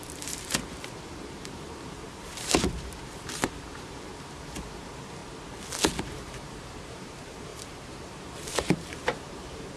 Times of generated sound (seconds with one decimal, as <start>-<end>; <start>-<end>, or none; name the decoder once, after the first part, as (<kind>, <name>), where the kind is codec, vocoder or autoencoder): 0.0-5.2 (vocoder, BigVGAN v2); 6.0-9.8